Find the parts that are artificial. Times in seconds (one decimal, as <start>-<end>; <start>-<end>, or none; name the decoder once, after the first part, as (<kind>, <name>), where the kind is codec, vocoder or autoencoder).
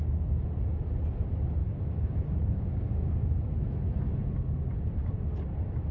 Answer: 1.6-3.5 (codec, DAC)